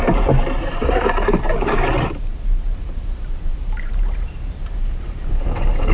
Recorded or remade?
remade